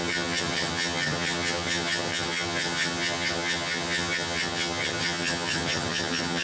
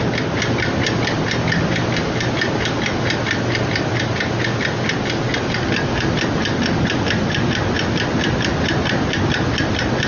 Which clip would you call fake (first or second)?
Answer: first